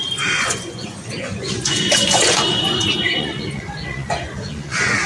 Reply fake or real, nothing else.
fake